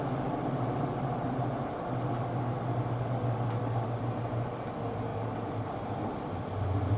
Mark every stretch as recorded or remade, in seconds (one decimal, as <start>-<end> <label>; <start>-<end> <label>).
0.0-5.1 recorded; 5.1-6.0 remade; 6.0-7.0 recorded